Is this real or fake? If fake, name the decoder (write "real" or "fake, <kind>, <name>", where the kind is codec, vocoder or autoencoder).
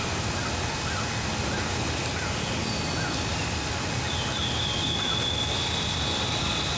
real